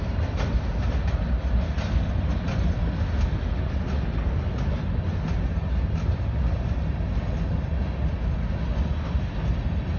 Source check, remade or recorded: recorded